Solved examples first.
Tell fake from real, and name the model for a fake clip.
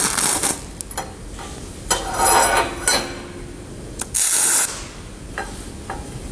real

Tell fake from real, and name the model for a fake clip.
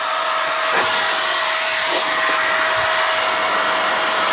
real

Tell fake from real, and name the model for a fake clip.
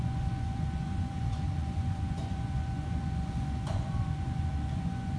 fake, vocoder, Vocos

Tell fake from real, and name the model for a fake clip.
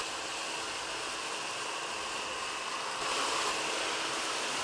real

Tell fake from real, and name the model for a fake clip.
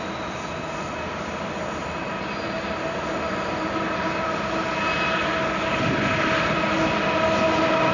real